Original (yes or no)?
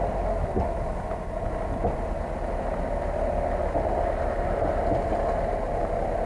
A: yes